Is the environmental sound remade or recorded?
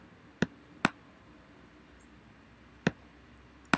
recorded